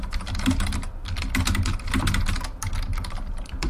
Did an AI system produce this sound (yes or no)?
no